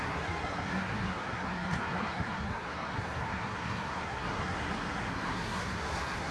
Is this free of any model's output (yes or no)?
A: no